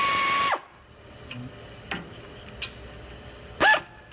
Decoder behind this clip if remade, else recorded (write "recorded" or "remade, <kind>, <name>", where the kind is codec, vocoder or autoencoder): recorded